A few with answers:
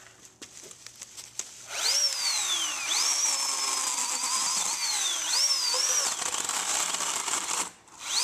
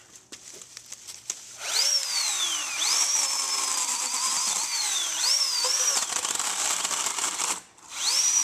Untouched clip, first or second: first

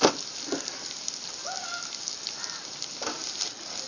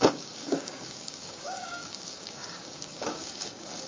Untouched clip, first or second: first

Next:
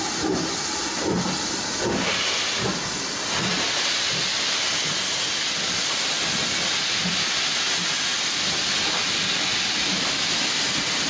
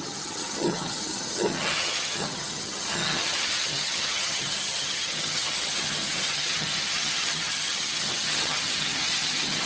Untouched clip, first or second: first